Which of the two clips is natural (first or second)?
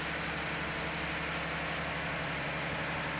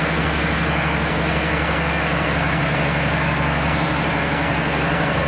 first